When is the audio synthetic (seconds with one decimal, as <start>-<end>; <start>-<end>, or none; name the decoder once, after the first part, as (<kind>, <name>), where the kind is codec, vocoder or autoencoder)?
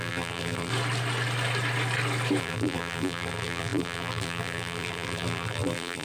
0.0-0.7 (vocoder, BigVGAN v2); 2.4-6.0